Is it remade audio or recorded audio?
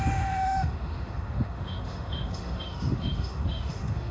remade